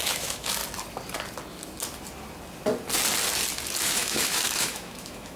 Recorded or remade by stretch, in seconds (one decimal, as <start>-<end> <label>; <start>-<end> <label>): 0.0-0.6 remade; 0.6-3.8 recorded; 3.8-5.4 remade